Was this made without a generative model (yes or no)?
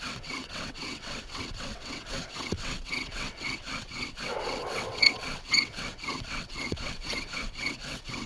no